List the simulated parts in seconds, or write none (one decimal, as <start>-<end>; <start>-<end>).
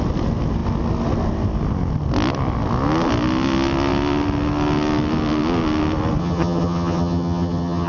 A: 6.2-7.9